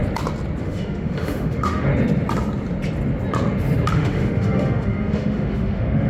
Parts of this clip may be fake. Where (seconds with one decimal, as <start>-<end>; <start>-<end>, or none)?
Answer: 0.6-1.9; 3.9-6.1